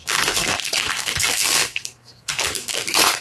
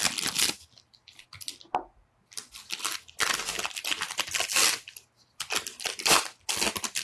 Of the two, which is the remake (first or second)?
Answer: first